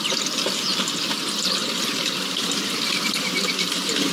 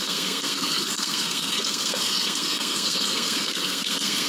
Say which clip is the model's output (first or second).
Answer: second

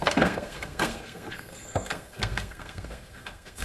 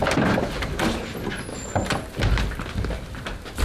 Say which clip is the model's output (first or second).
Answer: first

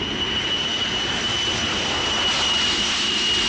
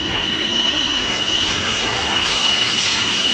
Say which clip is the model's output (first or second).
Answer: second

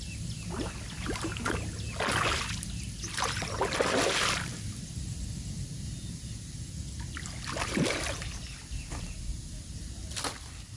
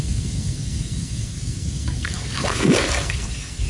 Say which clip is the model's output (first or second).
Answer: second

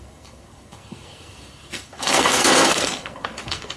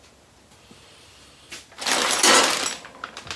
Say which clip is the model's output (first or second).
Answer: first